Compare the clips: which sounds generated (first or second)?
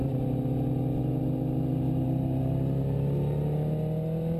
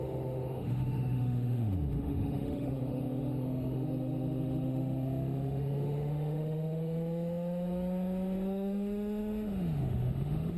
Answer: second